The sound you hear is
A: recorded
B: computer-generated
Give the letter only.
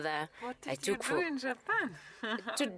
B